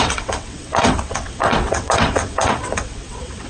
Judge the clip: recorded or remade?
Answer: remade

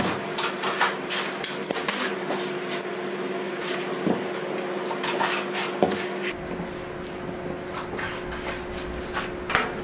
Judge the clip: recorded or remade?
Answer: recorded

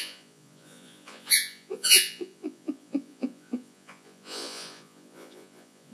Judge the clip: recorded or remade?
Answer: remade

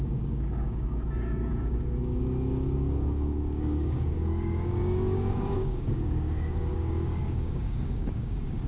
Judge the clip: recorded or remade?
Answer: remade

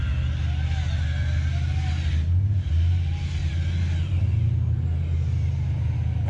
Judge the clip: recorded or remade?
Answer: recorded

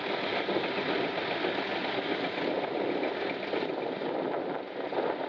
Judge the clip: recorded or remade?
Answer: recorded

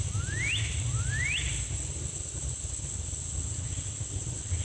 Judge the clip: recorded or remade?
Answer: recorded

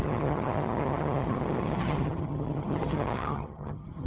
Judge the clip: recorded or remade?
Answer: remade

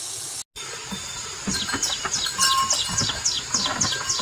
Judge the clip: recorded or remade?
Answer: recorded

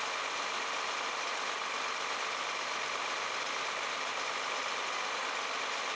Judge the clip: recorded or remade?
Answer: remade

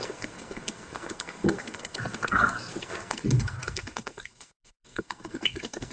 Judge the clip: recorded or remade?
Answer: remade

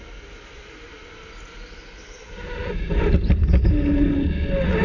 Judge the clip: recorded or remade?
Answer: recorded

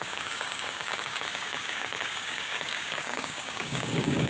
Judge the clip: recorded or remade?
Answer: remade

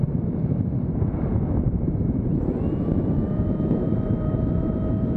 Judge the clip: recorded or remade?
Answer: remade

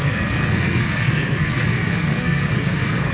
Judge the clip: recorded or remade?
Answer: remade